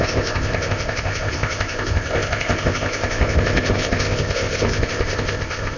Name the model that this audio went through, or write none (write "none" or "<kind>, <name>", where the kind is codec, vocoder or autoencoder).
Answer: codec, ZipCodec